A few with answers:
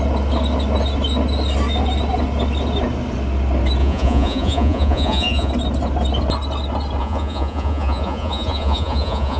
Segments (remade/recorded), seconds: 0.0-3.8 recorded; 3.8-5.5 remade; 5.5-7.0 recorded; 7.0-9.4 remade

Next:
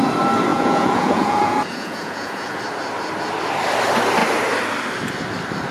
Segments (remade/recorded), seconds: 0.0-0.5 recorded; 0.5-2.6 remade; 2.6-5.7 recorded

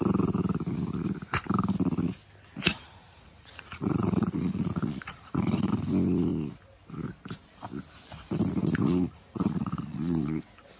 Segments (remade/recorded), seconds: 0.0-2.7 recorded; 2.7-5.7 remade; 5.7-8.6 recorded; 8.6-10.4 remade; 10.4-10.8 recorded

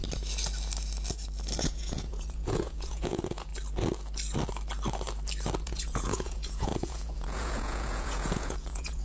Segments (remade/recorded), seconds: 0.0-1.6 recorded; 1.6-3.5 remade; 3.5-5.6 recorded; 5.6-9.0 remade

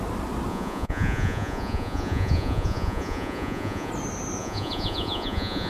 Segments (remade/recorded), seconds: 0.0-0.5 recorded; 0.5-3.9 remade; 3.9-4.4 recorded; 4.4-5.7 remade

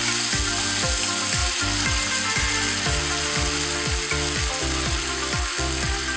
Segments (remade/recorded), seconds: 0.0-6.2 recorded

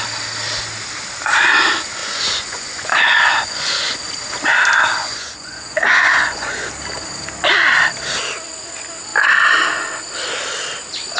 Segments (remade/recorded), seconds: 0.0-2.0 recorded; 2.0-4.1 remade; 4.1-5.0 recorded; 5.0-6.7 remade; 6.7-11.2 recorded